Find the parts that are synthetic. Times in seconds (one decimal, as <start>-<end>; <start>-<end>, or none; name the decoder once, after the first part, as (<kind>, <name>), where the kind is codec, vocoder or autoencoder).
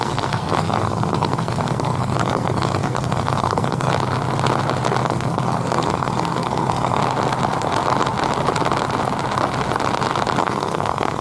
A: 0.0-3.9 (codec, SNAC); 5.0-7.0; 10.4-11.2